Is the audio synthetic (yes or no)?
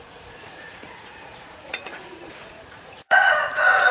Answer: yes